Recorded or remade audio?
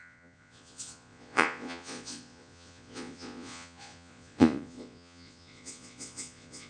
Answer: remade